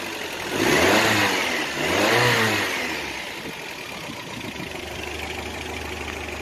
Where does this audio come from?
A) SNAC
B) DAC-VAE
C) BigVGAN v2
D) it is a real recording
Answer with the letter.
D